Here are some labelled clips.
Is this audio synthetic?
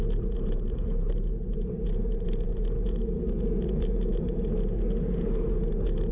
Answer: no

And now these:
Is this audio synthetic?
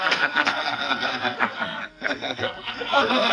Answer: yes